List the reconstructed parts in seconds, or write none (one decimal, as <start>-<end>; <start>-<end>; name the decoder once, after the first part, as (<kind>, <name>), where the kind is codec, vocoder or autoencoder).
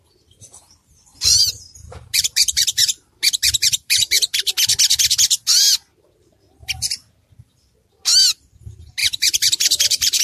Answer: 1.1-4.5 (vocoder, BigVGAN v2); 9.0-10.2